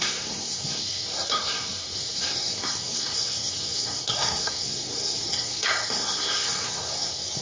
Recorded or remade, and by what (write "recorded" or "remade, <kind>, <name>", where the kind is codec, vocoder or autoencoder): remade, codec, SNAC